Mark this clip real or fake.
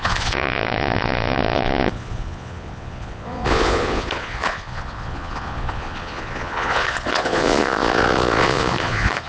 fake